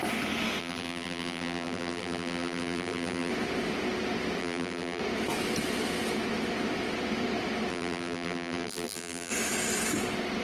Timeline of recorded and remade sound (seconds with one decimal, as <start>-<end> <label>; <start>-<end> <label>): 0.0-0.6 recorded; 0.6-3.3 remade; 3.3-4.4 recorded; 4.4-5.0 remade; 5.0-7.7 recorded; 7.7-9.3 remade; 9.3-10.4 recorded